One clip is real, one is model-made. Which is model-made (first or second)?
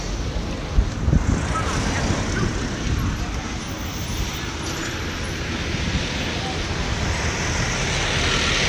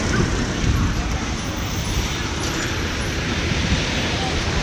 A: second